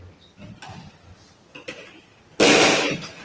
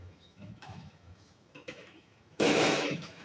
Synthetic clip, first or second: second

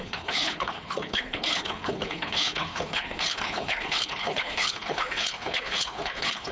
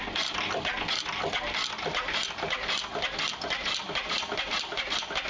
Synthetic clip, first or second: first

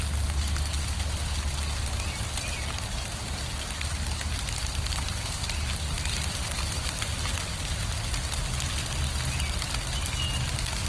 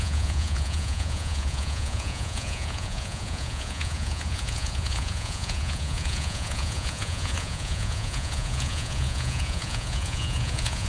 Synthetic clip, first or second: second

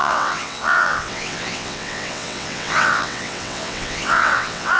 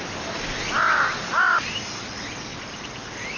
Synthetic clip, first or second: first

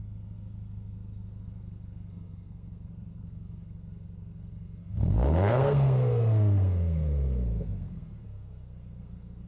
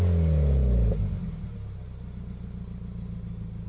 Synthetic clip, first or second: first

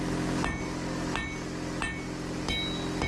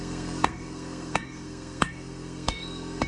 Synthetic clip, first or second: second